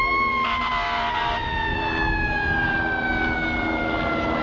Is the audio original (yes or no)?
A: yes